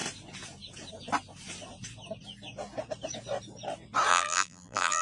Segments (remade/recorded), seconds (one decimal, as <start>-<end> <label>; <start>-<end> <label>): 0.0-4.1 recorded; 4.1-5.0 remade